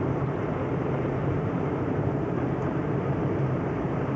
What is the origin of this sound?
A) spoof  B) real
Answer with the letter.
A